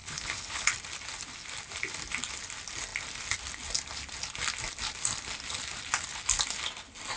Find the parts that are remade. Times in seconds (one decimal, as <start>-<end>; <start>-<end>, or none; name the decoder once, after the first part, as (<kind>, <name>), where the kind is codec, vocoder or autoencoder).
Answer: 0.0-0.7 (codec, HILCodec)